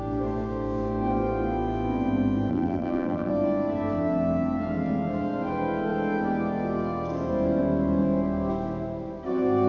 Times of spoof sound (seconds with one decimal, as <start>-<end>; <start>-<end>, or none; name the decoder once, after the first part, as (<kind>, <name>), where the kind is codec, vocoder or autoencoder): 2.5-3.3 (vocoder, BigVGAN v2)